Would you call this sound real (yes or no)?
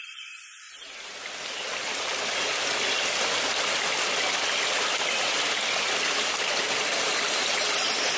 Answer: yes